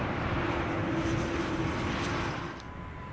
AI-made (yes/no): no